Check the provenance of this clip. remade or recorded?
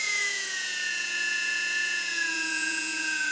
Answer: remade